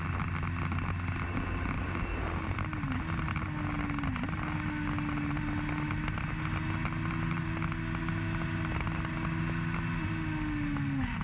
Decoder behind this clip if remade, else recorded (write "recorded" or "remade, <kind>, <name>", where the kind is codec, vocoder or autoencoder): recorded